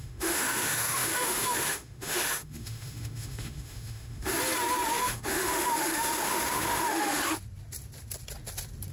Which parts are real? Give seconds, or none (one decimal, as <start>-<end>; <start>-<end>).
4.3-4.9; 7.2-8.9